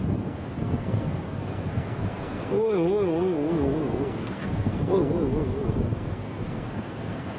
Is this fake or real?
fake